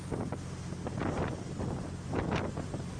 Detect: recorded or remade recorded